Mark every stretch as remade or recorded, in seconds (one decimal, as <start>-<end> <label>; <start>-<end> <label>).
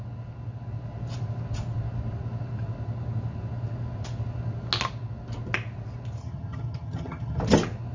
0.0-6.2 recorded; 6.2-7.4 remade; 7.4-7.9 recorded